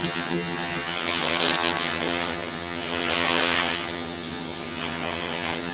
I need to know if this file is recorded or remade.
remade